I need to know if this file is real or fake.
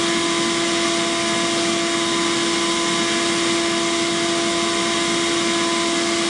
real